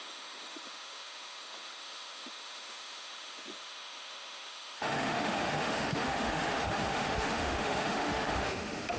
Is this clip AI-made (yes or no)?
yes